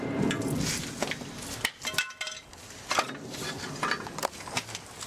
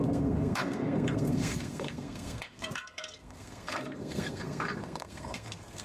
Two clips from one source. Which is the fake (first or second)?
second